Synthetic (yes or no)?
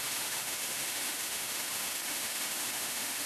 yes